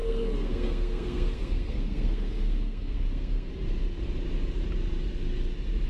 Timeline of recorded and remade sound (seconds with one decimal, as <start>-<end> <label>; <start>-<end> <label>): 0.0-3.5 remade; 3.5-5.9 recorded